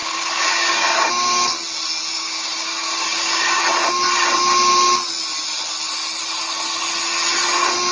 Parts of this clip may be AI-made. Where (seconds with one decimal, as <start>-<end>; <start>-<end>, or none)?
0.0-1.1; 2.1-3.6